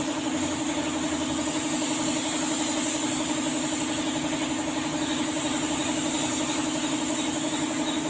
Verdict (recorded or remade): recorded